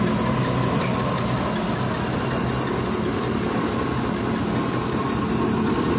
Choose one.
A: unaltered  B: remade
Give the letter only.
A